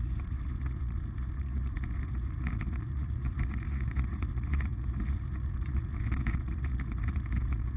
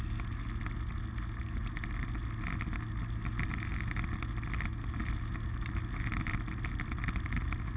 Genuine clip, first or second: second